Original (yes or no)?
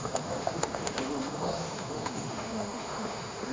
no